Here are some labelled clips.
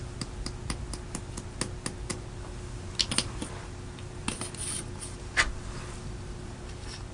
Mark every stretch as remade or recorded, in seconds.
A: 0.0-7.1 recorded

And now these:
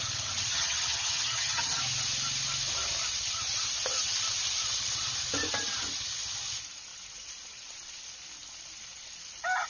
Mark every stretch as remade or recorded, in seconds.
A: 0.0-0.5 recorded; 0.5-1.8 remade; 1.8-9.7 recorded

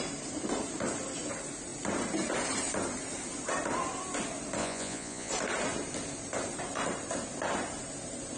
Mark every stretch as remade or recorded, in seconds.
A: 0.0-4.6 recorded; 4.6-5.3 remade; 5.3-8.4 recorded